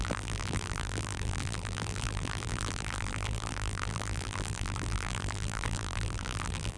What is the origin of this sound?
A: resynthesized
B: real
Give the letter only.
A